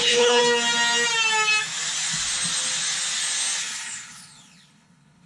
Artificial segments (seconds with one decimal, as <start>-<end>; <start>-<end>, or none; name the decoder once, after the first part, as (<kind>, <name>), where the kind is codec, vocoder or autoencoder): 0.0-0.4 (codec, HILCodec); 3.6-5.3